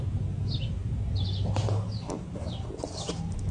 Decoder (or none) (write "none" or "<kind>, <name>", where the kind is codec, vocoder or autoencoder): none